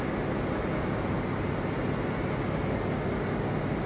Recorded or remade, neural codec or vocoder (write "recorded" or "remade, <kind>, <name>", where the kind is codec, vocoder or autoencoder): recorded